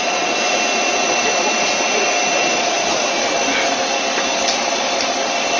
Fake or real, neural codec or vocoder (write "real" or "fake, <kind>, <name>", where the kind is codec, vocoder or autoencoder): real